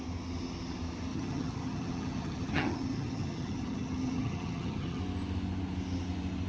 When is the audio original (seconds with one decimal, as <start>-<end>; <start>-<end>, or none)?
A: 0.0-1.1; 5.0-6.5